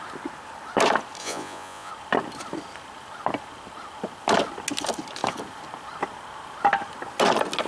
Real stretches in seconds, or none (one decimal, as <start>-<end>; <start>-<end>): 0.0-1.2; 1.9-7.7